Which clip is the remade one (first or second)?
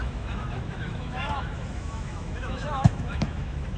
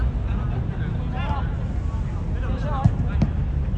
first